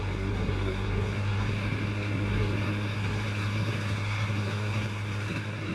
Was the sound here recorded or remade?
remade